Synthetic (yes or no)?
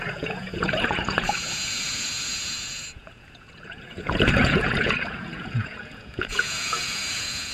yes